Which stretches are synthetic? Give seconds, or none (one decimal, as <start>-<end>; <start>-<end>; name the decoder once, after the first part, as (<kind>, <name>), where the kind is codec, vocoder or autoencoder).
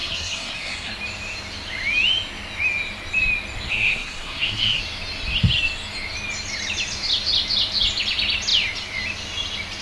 0.0-0.9 (codec, SNAC); 3.7-4.8